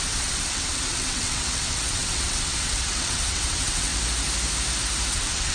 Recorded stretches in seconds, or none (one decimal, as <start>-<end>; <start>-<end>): 3.9-5.1